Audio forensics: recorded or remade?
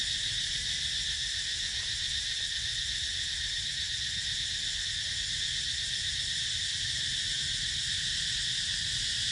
recorded